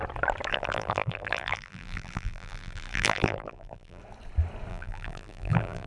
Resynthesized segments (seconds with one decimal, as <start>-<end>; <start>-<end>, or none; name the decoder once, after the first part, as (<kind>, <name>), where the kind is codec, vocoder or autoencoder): 0.5-4.0 (vocoder, BigVGAN v2); 4.7-5.9